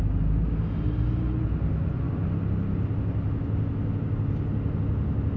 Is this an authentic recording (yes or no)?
yes